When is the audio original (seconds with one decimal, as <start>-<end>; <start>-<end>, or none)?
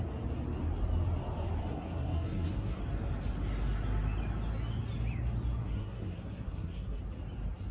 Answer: 0.0-1.6; 2.8-5.6; 7.0-7.7